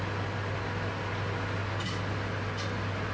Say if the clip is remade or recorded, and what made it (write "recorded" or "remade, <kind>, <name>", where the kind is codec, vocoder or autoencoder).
recorded